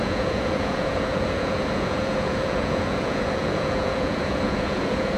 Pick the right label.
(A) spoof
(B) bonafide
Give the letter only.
A